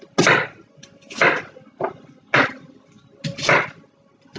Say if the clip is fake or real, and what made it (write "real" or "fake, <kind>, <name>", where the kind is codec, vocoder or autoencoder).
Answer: real